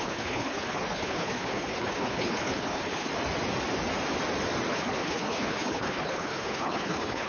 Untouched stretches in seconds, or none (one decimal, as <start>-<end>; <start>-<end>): 3.1-4.7